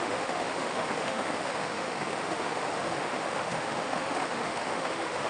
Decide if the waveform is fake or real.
fake